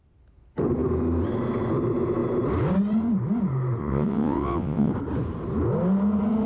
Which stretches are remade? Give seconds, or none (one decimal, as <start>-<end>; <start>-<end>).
3.8-4.9